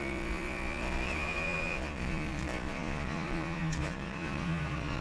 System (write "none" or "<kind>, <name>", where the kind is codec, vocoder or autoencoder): vocoder, Vocos